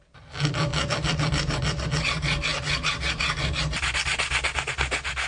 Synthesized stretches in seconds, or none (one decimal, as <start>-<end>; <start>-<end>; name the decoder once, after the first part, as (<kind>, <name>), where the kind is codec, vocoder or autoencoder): none